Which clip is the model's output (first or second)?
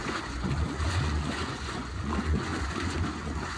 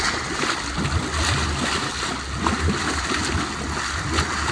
first